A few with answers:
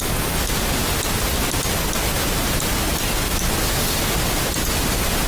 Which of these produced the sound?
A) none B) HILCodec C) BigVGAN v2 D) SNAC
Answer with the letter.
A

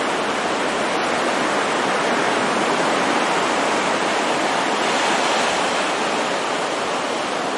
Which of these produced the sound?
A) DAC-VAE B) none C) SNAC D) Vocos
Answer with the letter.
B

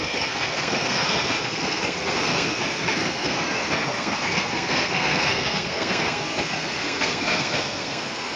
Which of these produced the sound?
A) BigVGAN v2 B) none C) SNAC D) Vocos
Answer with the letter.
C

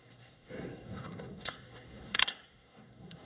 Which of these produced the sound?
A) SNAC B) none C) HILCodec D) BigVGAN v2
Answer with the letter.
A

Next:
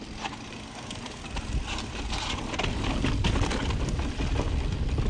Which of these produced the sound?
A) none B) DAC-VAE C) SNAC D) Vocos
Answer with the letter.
A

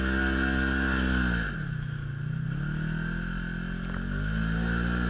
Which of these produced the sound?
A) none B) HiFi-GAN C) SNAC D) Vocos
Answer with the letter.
A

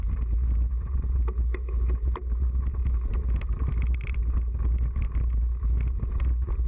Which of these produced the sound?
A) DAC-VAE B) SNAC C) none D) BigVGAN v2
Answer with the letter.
C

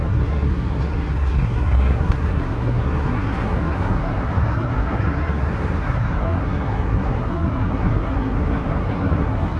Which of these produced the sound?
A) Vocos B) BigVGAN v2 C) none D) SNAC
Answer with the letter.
D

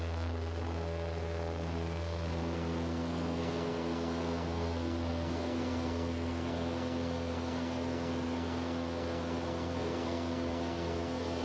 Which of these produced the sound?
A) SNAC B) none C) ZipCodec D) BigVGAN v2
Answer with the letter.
A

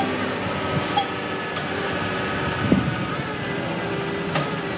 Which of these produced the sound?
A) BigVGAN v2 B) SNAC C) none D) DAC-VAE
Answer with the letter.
C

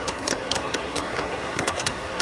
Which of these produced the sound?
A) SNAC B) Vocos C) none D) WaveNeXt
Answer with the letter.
A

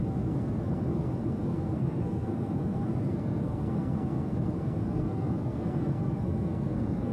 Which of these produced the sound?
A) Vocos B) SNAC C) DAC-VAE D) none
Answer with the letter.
B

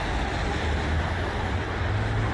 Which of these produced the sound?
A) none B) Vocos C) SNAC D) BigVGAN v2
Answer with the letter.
A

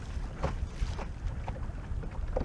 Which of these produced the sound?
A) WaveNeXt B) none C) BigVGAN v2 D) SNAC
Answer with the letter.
B